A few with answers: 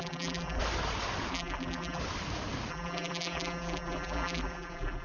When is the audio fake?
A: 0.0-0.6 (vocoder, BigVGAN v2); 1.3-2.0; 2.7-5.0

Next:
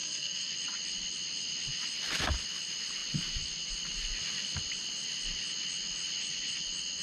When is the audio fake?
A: 0.0-0.5 (codec, SNAC)

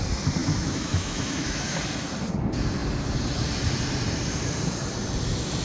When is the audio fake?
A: 0.4-1.8 (autoencoder, DAC-VAE)

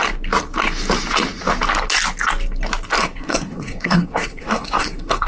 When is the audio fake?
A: 3.0-5.3 (codec, SNAC)

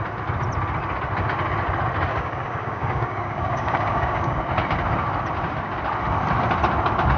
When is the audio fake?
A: 2.1-4.4 (codec, DAC)

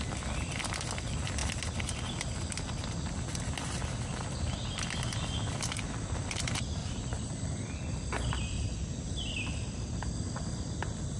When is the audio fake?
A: 6.8-9.1 (vocoder, BigVGAN v2)